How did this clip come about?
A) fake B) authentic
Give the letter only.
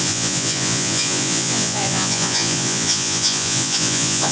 A